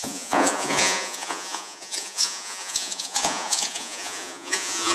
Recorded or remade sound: remade